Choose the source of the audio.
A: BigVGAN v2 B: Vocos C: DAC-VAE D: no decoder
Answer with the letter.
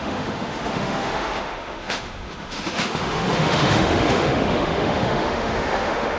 C